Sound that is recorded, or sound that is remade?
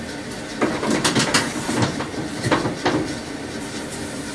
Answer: recorded